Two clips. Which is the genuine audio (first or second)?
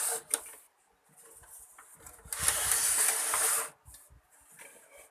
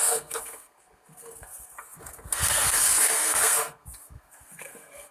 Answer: first